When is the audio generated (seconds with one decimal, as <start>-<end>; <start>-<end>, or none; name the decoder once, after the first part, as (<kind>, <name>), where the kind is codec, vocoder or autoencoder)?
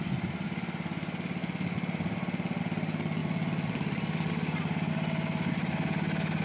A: 3.2-4.9 (vocoder, BigVGAN v2)